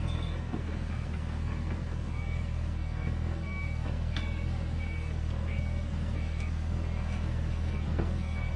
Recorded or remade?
remade